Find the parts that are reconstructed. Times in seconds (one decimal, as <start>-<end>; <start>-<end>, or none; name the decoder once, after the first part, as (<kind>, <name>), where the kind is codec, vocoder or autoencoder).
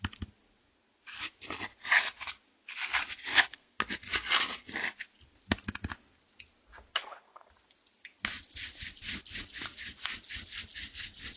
3.3-3.8 (codec, SNAC); 6.9-7.5